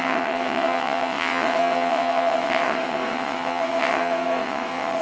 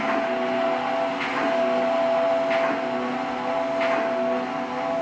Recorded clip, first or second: second